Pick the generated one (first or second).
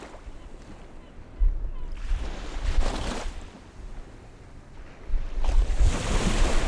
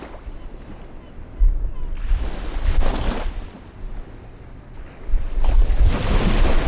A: first